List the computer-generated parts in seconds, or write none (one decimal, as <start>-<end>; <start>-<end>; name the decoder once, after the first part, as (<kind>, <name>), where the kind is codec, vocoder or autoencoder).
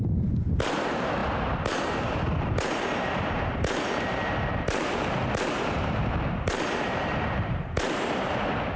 0.0-1.2 (vocoder, BigVGAN v2); 1.8-8.8